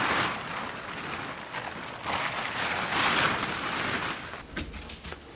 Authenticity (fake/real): real